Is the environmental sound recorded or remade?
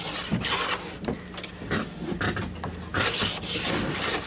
recorded